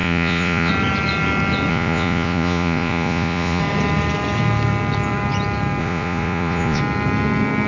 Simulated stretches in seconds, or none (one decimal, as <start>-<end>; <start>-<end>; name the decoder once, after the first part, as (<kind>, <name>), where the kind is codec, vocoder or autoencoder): 0.0-0.7 (vocoder, Vocos); 1.7-3.6; 5.8-6.8